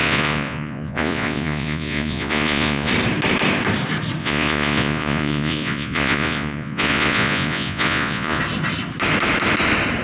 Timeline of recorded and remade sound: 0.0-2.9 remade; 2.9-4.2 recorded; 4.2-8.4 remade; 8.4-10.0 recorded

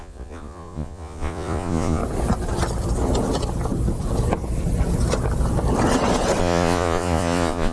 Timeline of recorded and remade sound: 0.0-2.0 remade; 2.0-6.4 recorded; 6.4-7.7 remade

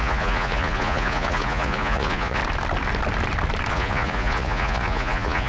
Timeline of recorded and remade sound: 0.0-2.4 remade; 2.4-3.7 recorded; 3.7-5.5 remade

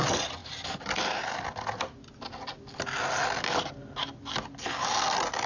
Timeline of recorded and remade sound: 0.0-5.5 recorded

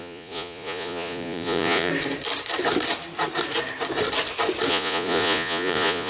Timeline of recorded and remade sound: 0.0-1.9 remade; 1.9-4.7 recorded; 4.7-6.1 remade

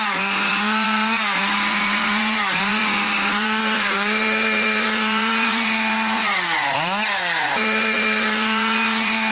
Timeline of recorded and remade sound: 0.0-9.3 remade

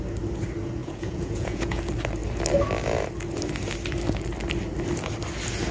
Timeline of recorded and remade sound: 0.0-0.8 recorded; 0.8-1.8 remade; 1.8-5.7 recorded